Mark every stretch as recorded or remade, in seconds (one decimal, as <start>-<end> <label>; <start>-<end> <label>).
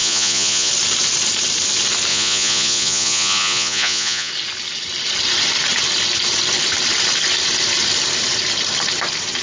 0.0-0.7 remade; 0.7-2.1 recorded; 2.1-4.3 remade; 4.3-9.4 recorded